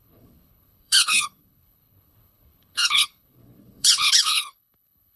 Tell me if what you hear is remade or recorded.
remade